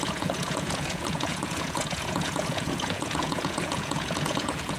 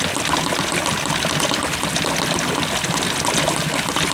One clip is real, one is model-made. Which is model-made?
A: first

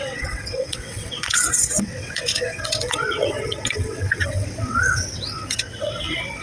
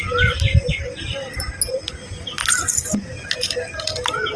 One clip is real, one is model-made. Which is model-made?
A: first